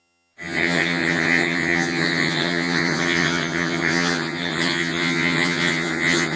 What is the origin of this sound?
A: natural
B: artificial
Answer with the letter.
B